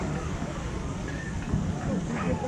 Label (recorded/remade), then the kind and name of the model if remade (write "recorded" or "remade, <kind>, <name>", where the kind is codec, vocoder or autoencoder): remade, codec, DAC